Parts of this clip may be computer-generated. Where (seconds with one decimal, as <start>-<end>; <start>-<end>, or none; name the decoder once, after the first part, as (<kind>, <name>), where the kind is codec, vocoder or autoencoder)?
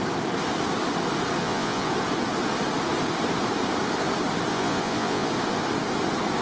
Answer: 1.4-1.9 (vocoder, Vocos); 4.5-5.3